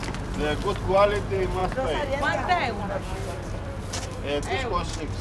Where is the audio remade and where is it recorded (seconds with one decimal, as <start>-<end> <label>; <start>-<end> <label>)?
0.0-5.2 recorded